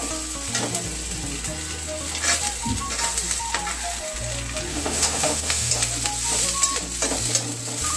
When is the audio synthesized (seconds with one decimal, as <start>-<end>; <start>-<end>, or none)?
4.7-5.7